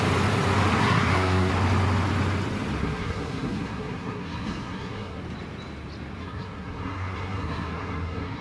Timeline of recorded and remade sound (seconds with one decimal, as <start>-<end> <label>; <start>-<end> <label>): 0.0-0.8 recorded; 0.8-1.5 remade; 1.5-2.8 recorded; 2.8-5.2 remade; 5.2-6.2 recorded; 6.2-8.4 remade